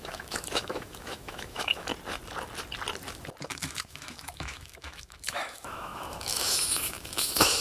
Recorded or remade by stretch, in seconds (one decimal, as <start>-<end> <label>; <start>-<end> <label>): 0.0-1.9 remade; 1.9-3.4 recorded; 3.4-7.6 remade